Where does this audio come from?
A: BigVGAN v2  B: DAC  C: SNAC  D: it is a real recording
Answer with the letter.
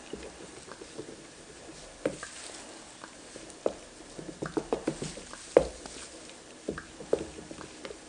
D